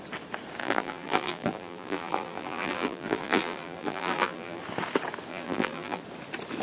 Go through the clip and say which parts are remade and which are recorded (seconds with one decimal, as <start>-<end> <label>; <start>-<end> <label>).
0.0-0.6 recorded; 0.6-4.6 remade; 4.6-5.3 recorded; 5.3-6.0 remade; 6.0-6.6 recorded